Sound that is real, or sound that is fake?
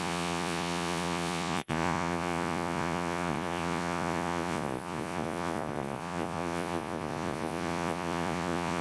fake